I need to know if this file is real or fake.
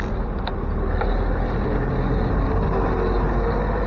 real